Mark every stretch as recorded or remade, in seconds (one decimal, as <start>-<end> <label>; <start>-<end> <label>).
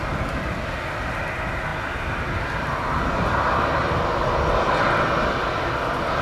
0.0-6.2 recorded